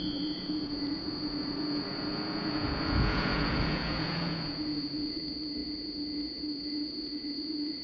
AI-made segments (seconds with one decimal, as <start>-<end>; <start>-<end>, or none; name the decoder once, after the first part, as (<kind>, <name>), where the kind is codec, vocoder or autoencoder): 0.0-7.8 (vocoder, Vocos)